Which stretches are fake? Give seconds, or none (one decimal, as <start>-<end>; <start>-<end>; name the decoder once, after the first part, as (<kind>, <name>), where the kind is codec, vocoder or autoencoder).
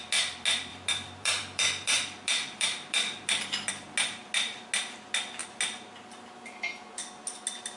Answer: 0.7-3.7 (vocoder, BigVGAN v2)